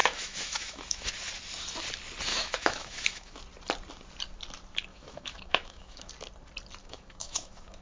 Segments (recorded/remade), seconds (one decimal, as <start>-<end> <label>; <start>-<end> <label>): 0.0-1.1 remade; 1.1-2.3 recorded; 2.3-3.4 remade; 3.4-4.9 recorded; 4.9-6.1 remade; 6.1-6.8 recorded; 6.8-7.8 remade

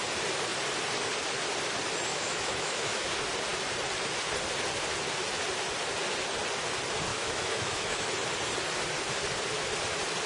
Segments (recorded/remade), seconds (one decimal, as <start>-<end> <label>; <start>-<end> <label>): 0.0-2.1 recorded; 2.1-3.1 remade; 3.1-7.1 recorded; 7.1-8.1 remade; 8.1-10.3 recorded

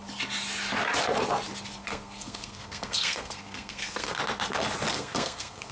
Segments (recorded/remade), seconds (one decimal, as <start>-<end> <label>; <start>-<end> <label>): 0.0-1.8 recorded; 1.8-4.2 remade; 4.2-4.9 recorded; 4.9-5.7 remade

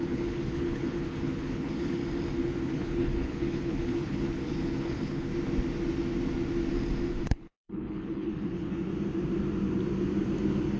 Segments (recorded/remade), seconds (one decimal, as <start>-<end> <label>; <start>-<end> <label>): 0.0-2.0 remade; 2.0-2.6 recorded; 2.6-5.3 remade; 5.3-7.1 recorded; 7.1-8.9 remade; 8.9-10.8 recorded

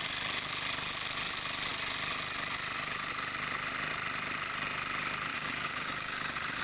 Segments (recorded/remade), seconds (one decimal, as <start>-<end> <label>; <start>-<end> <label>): 0.0-5.3 recorded; 5.3-6.6 remade

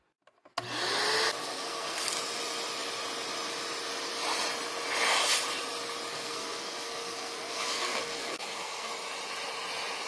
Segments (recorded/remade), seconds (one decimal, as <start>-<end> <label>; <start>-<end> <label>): 0.0-1.4 recorded; 1.4-2.1 remade; 2.1-6.1 recorded; 6.1-8.9 remade; 8.9-10.1 recorded